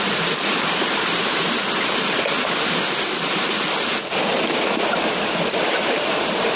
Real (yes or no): yes